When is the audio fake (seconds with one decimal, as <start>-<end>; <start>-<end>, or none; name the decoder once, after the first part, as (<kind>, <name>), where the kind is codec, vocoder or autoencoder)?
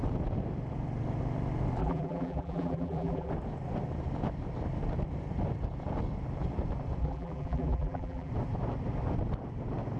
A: 1.8-3.3 (vocoder, BigVGAN v2); 7.0-8.3